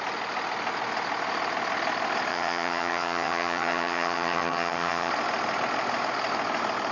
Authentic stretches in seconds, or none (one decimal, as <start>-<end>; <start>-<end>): 0.0-2.3; 5.1-6.9